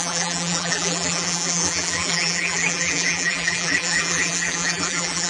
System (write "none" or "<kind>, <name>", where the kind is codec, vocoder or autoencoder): vocoder, BigVGAN v2